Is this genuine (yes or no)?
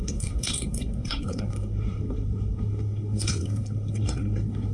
no